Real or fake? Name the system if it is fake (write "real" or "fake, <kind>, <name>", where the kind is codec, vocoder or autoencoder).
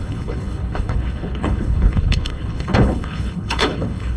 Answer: fake, codec, HILCodec